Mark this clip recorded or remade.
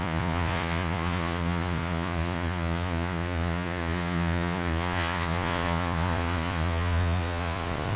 remade